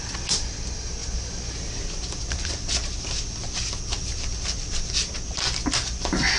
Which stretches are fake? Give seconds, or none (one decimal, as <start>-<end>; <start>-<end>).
none